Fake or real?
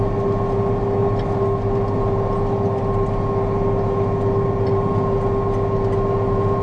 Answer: real